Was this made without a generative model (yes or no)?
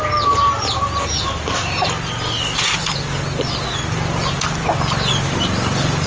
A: yes